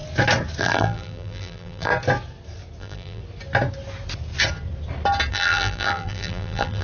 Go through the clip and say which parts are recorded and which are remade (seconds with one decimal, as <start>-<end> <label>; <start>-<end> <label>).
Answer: 0.0-0.6 recorded; 0.6-1.9 remade; 1.9-2.8 recorded; 2.8-3.2 remade; 3.2-5.3 recorded; 5.3-6.8 remade